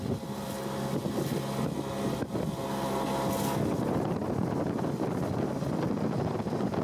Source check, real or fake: real